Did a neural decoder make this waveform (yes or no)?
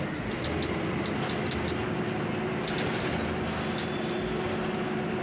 no